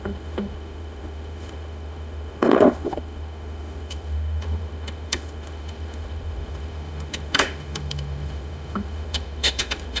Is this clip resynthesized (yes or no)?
yes